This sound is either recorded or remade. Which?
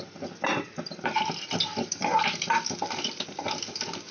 remade